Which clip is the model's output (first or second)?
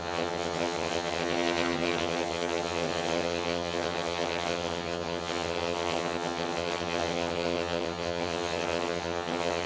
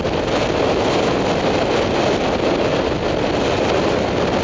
first